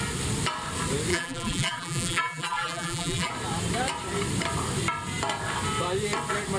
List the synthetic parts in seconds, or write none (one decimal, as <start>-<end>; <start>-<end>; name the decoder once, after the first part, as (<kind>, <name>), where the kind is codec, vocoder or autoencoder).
1.1-3.3 (vocoder, BigVGAN v2)